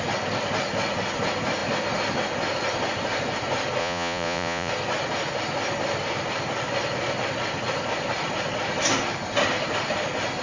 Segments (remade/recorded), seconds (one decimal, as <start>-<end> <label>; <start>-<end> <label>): 0.0-3.8 recorded; 3.8-4.7 remade; 4.7-10.4 recorded